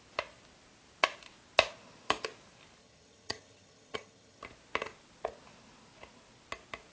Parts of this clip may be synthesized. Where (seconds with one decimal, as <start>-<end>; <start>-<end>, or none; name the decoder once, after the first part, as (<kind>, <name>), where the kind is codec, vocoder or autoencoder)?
2.8-4.4 (vocoder, HiFi-GAN)